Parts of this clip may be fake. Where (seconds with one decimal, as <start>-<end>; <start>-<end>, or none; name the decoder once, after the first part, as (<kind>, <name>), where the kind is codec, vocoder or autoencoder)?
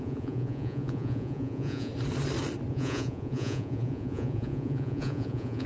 0.0-1.9 (vocoder, Vocos); 2.7-5.7